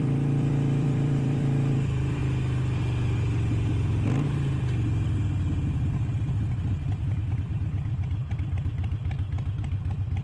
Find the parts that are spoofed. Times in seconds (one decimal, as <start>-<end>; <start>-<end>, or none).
0.0-2.2; 6.7-10.2